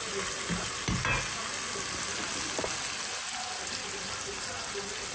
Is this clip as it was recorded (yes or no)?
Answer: yes